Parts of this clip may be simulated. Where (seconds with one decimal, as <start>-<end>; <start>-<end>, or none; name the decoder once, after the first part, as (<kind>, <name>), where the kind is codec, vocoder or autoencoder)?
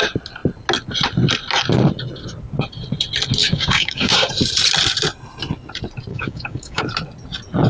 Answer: 3.4-4.3 (codec, DAC); 6.1-6.8